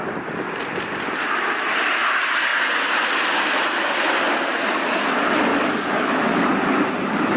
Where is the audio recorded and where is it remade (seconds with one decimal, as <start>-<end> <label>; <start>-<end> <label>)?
0.0-5.5 recorded; 5.5-6.1 remade; 6.1-7.4 recorded